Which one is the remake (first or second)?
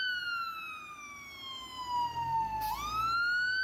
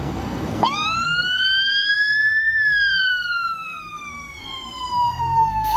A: second